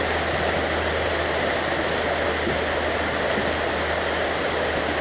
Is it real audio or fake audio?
real